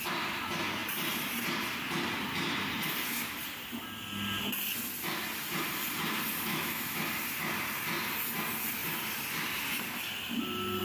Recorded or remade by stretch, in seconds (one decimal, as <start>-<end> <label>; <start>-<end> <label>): 0.0-6.5 recorded; 6.5-7.1 remade; 7.1-10.8 recorded